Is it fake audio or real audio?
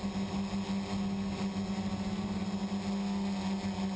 real